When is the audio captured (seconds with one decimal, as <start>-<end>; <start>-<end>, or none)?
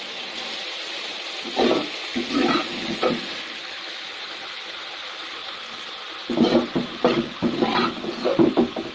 2.1-3.2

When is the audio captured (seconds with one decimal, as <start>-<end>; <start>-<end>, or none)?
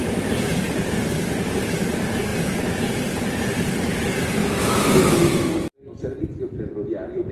0.0-4.4; 5.5-7.3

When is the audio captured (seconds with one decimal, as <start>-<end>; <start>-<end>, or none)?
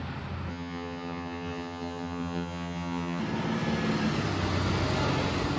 0.0-0.5; 3.2-5.6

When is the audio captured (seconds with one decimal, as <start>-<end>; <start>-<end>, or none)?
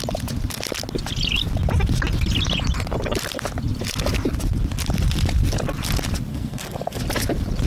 0.0-6.3; 7.0-7.7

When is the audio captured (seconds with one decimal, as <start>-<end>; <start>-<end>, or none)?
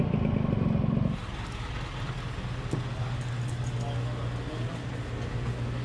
0.0-5.8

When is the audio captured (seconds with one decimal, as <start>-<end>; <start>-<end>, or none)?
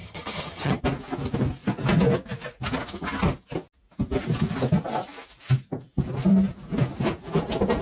0.8-7.8